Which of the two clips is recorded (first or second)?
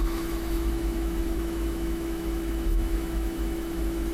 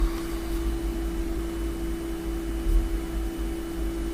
second